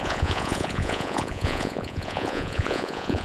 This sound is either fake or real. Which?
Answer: fake